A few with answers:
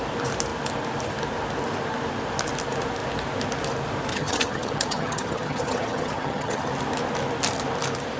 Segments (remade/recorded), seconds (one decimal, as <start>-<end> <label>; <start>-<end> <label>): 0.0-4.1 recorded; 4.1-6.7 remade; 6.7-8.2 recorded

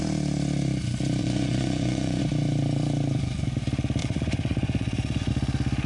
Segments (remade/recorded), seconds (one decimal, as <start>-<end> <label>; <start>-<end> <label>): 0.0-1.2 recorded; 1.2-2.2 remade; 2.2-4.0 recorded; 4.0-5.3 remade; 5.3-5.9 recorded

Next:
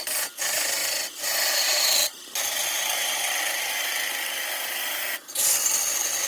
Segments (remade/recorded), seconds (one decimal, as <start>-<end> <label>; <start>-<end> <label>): 0.0-6.3 recorded